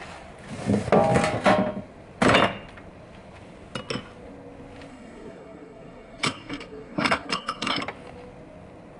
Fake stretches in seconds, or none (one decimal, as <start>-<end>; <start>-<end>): 4.9-7.8